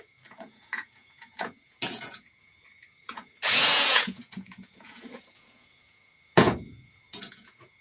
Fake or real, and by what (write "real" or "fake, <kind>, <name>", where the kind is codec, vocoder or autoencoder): fake, vocoder, Vocos